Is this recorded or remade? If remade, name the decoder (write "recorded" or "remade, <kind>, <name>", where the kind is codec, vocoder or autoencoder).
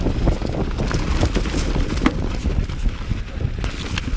recorded